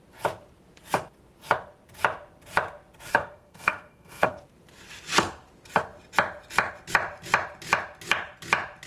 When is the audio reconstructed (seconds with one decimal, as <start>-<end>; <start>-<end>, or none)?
3.1-4.4